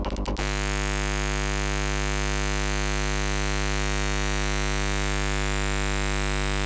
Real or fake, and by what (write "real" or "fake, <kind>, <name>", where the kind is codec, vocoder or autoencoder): real